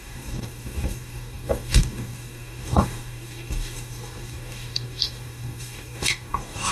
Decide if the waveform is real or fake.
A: fake